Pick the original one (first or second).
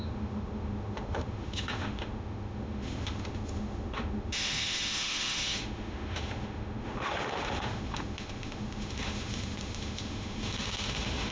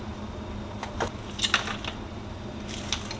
second